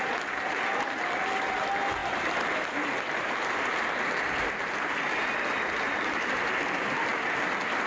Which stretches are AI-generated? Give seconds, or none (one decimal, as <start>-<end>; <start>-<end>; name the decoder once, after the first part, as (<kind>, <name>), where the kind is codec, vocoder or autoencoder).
none